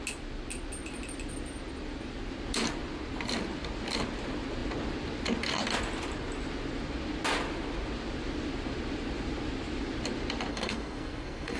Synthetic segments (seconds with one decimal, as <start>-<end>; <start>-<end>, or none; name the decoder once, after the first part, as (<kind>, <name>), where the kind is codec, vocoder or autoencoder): 10.5-11.6 (codec, SNAC)